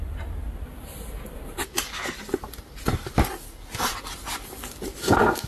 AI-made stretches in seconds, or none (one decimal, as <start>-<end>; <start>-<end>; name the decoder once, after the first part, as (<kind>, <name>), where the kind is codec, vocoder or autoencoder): 5.0-5.5 (codec, SNAC)